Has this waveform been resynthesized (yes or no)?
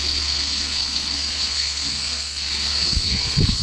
yes